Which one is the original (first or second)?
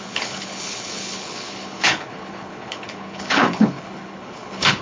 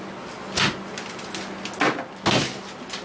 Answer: second